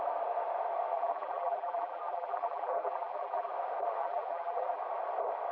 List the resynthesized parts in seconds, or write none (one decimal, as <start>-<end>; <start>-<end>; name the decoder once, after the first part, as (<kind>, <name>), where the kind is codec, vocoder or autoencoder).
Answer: 0.9-3.5 (vocoder, BigVGAN v2); 4.0-4.8